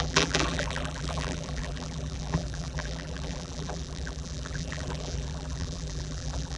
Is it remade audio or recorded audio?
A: remade